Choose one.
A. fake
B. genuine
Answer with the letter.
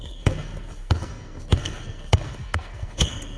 A